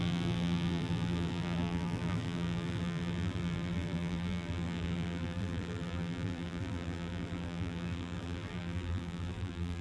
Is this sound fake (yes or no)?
yes